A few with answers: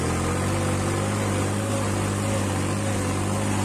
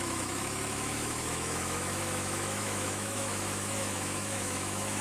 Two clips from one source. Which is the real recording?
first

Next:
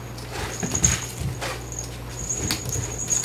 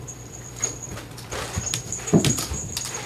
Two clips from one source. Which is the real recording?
first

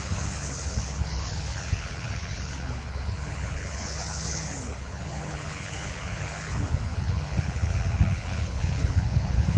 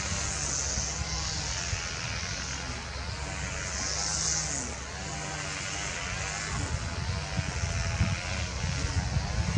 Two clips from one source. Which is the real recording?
second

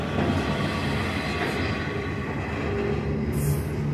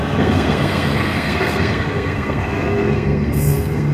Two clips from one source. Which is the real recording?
first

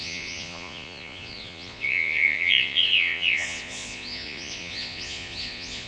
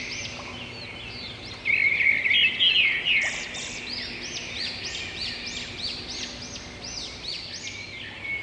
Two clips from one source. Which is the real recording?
second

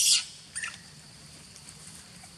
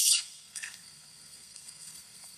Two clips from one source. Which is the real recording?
first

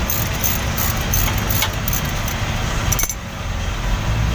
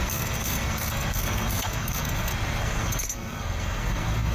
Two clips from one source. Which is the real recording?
first